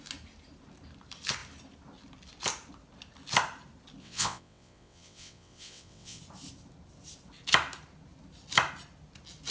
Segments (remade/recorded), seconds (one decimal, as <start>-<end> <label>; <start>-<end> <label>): 0.0-4.0 recorded; 4.0-6.2 remade; 6.2-9.5 recorded